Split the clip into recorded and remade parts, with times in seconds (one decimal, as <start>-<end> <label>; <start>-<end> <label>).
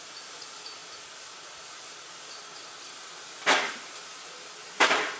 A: 0.0-5.2 recorded